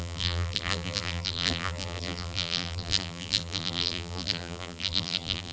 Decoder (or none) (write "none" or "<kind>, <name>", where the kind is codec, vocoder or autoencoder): vocoder, BigVGAN v2